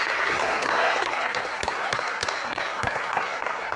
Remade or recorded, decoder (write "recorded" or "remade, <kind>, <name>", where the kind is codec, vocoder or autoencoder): remade, codec, SNAC